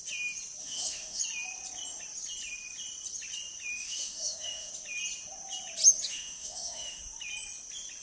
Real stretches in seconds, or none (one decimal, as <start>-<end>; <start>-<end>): 0.0-0.6; 1.2-3.7; 4.7-6.1; 7.0-8.0